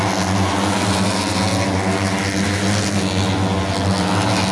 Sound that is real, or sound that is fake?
real